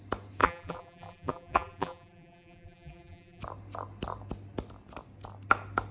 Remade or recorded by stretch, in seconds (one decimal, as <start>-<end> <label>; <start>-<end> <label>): 0.0-0.4 recorded; 0.4-3.4 remade; 3.4-5.9 recorded